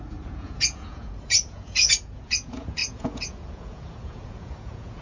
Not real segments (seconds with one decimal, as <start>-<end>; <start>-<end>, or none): 0.0-5.0